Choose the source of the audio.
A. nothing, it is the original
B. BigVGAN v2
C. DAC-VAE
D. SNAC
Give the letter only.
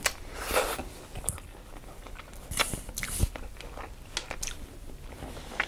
A